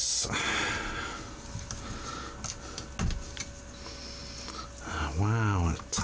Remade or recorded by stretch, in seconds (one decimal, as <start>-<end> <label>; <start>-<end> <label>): 0.0-6.0 recorded